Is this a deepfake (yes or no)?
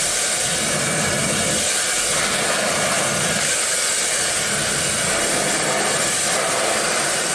no